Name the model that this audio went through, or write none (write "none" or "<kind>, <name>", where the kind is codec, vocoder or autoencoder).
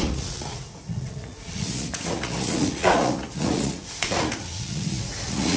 vocoder, Vocos